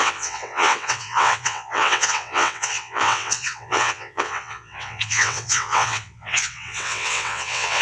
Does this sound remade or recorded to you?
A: remade